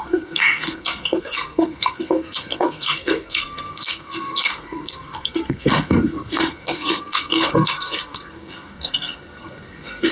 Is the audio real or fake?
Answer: fake